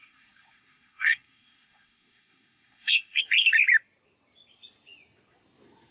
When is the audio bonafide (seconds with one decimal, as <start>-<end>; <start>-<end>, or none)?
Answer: 3.2-5.9